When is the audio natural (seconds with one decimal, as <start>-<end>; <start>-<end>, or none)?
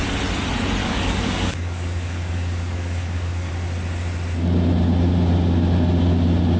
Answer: 0.0-0.8; 3.5-6.6